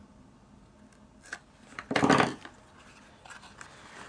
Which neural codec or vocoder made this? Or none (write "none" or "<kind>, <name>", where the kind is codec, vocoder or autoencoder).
none